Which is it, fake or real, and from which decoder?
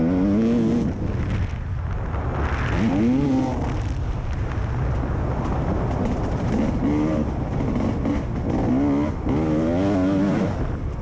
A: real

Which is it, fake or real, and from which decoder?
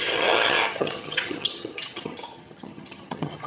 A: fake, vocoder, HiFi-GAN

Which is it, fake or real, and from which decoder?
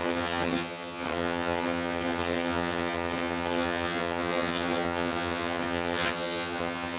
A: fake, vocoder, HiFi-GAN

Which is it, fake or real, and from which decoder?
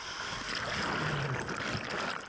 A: real